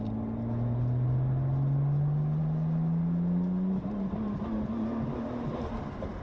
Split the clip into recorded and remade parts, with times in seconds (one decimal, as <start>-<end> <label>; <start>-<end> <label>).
0.0-6.2 recorded